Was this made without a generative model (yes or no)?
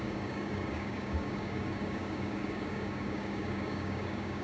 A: no